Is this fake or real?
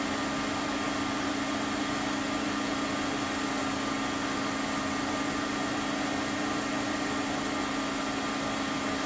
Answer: real